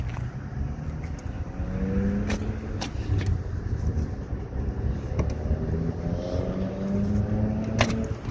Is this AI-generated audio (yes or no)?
no